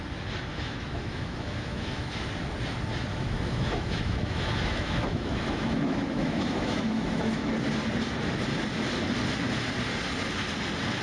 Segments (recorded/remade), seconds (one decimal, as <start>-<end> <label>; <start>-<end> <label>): 0.0-0.5 recorded; 0.5-2.1 remade; 2.1-3.1 recorded; 3.1-7.5 remade; 7.5-11.0 recorded